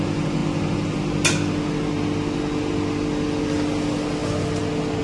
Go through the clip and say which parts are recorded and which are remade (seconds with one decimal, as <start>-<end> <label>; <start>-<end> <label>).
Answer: 0.0-5.0 recorded